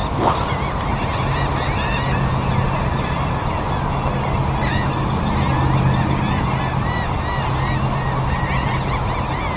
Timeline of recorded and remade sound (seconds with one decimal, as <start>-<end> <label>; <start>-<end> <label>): 0.0-9.6 recorded